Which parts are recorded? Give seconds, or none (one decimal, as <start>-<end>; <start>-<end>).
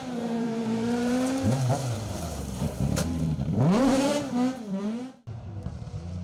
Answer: 4.1-4.8